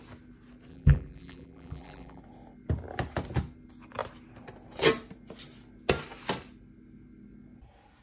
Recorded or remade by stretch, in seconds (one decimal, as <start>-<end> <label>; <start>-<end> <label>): 0.0-0.7 recorded; 0.7-2.2 remade; 2.2-8.0 recorded